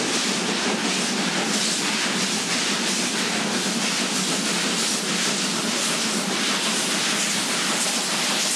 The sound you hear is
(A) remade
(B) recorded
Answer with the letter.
B